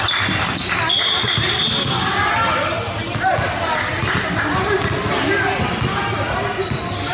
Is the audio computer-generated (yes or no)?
no